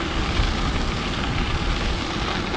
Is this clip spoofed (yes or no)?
no